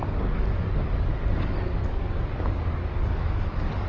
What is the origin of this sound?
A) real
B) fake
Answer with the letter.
B